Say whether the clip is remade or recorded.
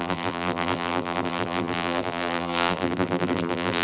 remade